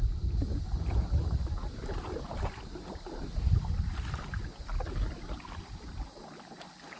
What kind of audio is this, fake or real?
real